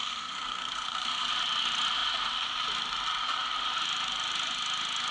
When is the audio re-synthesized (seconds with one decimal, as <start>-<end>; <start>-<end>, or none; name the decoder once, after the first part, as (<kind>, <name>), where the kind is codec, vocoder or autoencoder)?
0.0-1.3 (codec, SNAC)